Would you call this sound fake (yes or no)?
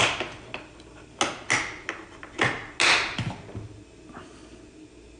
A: no